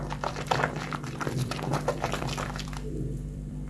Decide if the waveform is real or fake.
fake